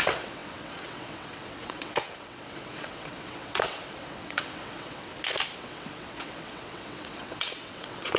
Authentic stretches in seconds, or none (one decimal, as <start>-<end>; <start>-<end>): 5.1-5.6